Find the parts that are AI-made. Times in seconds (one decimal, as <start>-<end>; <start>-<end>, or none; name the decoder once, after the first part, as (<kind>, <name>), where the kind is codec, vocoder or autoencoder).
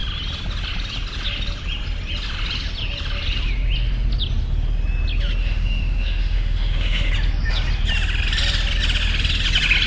5.4-7.1 (autoencoder, DAC-VAE)